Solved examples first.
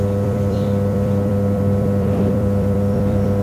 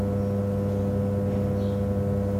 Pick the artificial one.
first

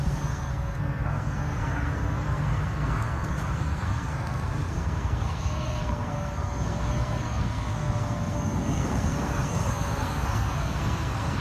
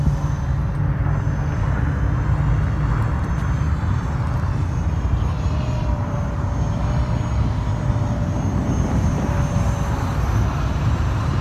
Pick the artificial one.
first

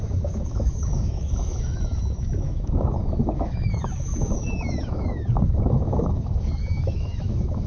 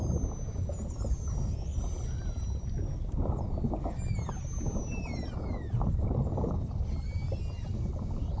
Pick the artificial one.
first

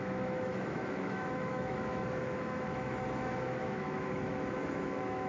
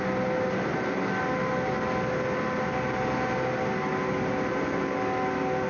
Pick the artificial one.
first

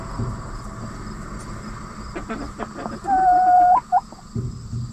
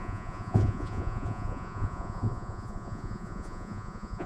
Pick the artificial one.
second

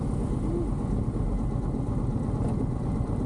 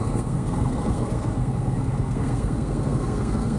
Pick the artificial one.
second